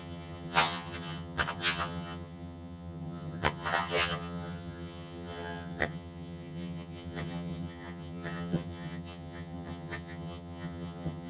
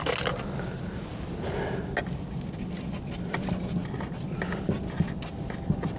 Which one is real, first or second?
second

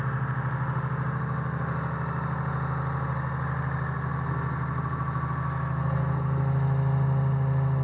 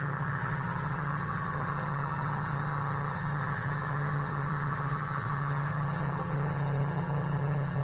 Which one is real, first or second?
first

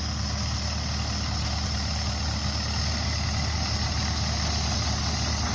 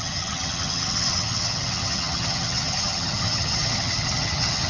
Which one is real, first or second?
first